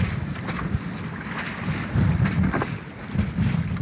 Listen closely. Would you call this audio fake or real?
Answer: real